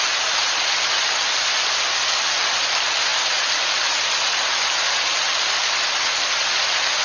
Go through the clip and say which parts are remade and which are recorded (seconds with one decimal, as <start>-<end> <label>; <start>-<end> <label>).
0.0-7.0 recorded